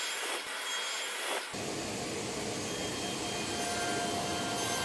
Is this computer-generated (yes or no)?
no